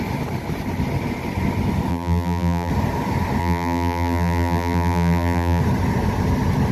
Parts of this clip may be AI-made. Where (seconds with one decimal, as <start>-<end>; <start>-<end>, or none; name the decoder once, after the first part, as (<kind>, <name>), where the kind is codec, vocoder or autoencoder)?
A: 1.9-2.7 (vocoder, BigVGAN v2); 3.4-5.6